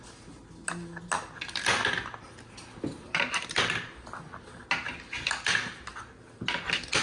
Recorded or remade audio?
recorded